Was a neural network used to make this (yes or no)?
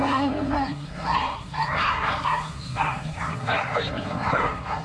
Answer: yes